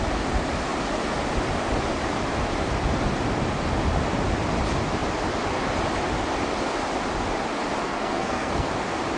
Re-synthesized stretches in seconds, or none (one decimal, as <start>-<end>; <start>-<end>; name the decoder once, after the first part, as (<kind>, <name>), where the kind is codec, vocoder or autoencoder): 7.8-8.7 (codec, SNAC)